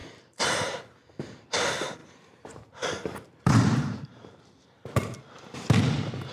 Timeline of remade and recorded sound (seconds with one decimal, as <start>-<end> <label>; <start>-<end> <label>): 0.0-0.7 remade; 0.7-2.0 recorded; 2.0-5.7 remade; 5.7-6.3 recorded